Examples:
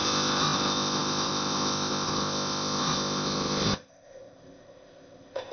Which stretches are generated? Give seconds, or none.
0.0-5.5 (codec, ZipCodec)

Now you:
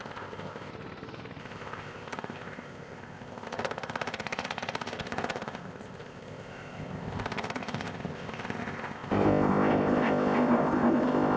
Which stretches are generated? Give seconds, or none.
0.0-0.7 (codec, ZipCodec); 1.4-11.4

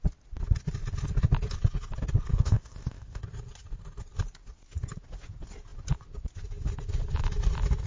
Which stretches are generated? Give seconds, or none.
2.3-3.2 (codec, ZipCodec)

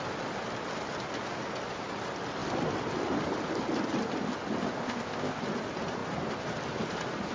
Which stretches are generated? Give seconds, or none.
4.8-5.4 (codec, ZipCodec)

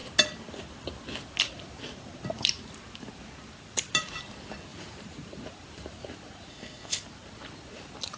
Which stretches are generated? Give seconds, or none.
6.5-7.0 (codec, ZipCodec)

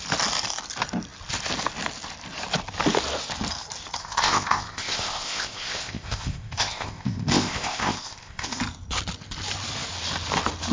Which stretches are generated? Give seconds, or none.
4.0-8.6 (codec, ZipCodec)

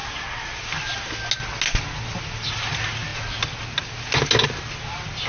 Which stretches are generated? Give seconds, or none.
none